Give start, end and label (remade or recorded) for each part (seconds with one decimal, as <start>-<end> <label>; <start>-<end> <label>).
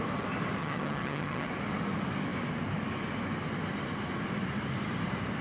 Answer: 0.0-0.6 recorded; 0.6-1.5 remade; 1.5-5.4 recorded